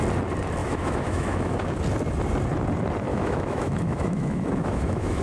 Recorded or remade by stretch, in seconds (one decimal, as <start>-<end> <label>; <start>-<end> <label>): 0.0-0.6 recorded; 0.6-1.8 remade; 1.8-3.1 recorded; 3.1-5.2 remade